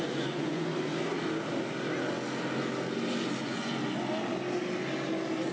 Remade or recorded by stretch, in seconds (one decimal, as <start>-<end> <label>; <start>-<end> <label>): 0.0-0.7 remade; 0.7-3.4 recorded; 3.4-3.8 remade; 3.8-5.5 recorded